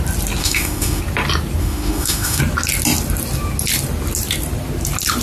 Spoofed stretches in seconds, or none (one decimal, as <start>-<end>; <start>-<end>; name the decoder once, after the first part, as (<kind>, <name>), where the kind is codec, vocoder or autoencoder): 0.4-1.0 (autoencoder, DAC-VAE); 1.6-2.4